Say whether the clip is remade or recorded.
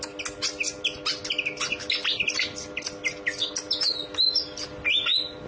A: recorded